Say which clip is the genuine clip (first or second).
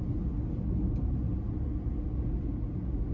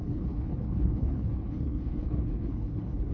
first